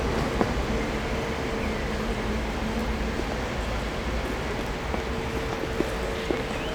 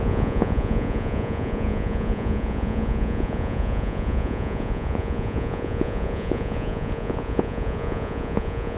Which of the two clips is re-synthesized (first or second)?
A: second